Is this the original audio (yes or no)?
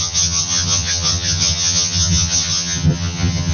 no